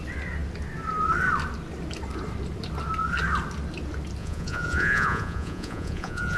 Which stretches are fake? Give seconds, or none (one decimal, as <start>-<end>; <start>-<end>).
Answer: 4.2-6.4